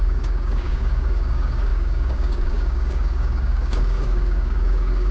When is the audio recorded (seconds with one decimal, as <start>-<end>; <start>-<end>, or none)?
none